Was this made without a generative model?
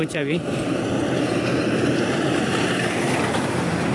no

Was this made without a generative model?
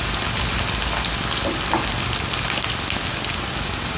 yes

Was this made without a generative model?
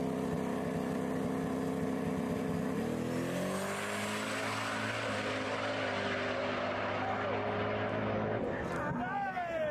yes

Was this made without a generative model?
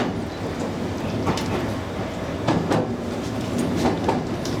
yes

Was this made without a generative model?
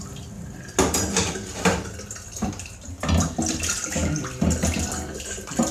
no